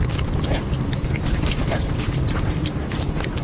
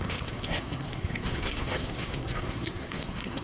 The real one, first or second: first